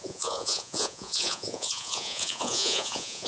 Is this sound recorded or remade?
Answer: remade